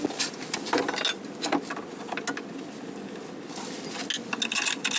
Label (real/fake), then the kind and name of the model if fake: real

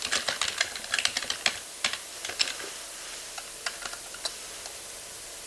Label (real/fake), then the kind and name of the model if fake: real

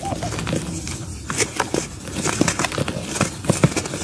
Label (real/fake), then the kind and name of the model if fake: real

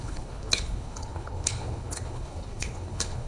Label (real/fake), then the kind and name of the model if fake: fake, codec, HILCodec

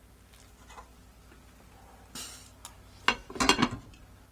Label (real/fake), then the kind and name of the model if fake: real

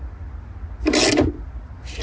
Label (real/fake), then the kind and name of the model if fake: real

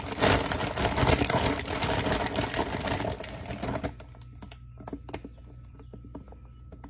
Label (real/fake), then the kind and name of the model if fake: real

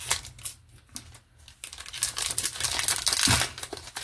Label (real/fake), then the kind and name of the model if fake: real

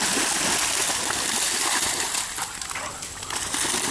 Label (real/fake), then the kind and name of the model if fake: real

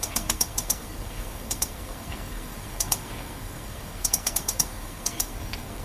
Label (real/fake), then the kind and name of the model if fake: fake, codec, SNAC